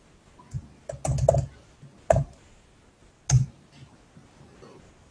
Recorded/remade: recorded